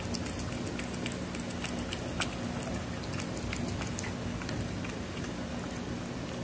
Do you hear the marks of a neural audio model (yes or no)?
no